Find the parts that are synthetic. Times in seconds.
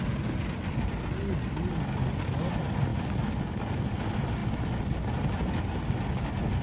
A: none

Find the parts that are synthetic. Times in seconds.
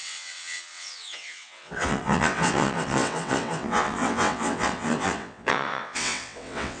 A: 0.0-6.8 (vocoder, WaveNeXt)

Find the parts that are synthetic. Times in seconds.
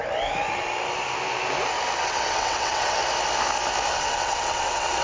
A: 2.0-3.0 (vocoder, WaveNeXt); 3.9-5.0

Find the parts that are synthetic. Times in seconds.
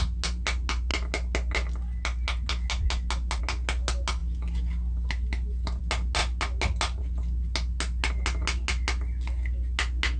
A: none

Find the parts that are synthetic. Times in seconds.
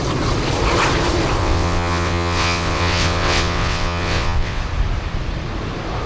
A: 1.4-4.6 (vocoder, WaveNeXt)